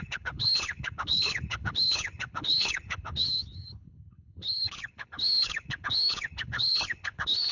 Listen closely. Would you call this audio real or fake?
fake